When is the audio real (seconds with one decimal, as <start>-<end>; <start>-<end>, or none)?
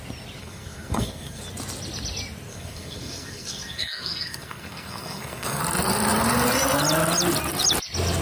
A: 0.0-0.4; 1.4-2.5; 5.6-8.2